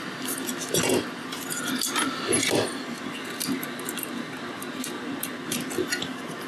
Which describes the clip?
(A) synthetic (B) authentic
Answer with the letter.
B